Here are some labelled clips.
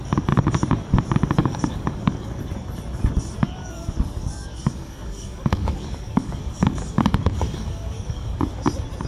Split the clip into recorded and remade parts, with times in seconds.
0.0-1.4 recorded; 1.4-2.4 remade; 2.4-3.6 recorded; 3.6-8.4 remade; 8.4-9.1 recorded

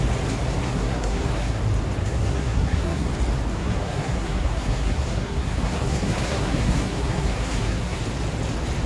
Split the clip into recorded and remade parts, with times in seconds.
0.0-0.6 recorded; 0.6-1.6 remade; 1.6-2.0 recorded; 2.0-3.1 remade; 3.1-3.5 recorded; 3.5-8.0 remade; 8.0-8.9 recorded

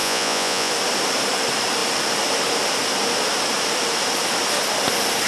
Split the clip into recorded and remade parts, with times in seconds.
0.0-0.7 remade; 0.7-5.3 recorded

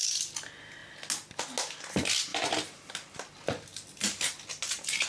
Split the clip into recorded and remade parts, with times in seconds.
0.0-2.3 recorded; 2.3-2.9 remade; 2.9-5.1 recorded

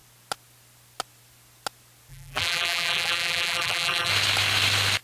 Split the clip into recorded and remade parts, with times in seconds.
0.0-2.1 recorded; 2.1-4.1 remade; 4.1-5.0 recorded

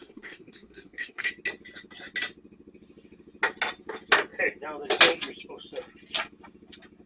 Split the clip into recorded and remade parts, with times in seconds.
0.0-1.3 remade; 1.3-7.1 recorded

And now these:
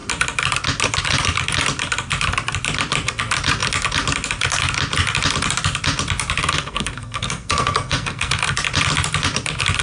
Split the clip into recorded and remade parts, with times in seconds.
0.0-6.4 recorded; 6.4-8.3 remade; 8.3-9.8 recorded